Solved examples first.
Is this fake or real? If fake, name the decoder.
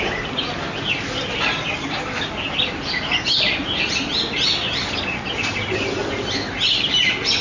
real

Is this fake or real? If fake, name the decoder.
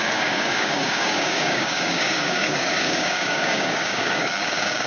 fake, codec, DAC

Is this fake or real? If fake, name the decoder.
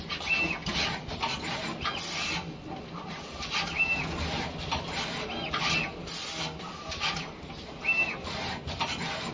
real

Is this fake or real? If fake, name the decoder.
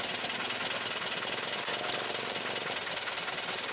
real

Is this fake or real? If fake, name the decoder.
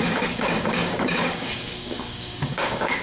fake, codec, DAC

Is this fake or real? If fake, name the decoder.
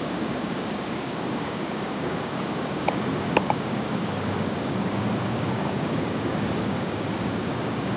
fake, codec, DAC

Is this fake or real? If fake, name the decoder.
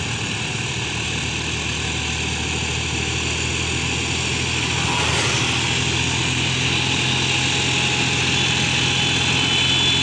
real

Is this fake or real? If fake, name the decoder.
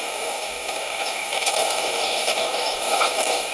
fake, codec, DAC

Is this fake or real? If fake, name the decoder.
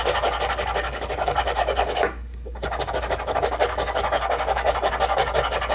fake, codec, DAC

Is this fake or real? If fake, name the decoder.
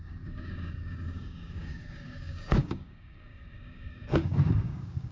fake, codec, DAC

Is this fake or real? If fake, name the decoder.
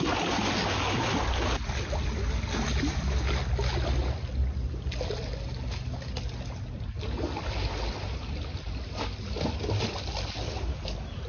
real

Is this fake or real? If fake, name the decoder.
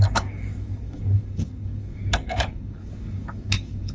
fake, codec, DAC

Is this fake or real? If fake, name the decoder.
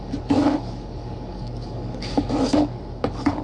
fake, codec, DAC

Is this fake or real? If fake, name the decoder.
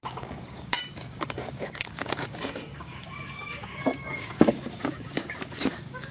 fake, codec, DAC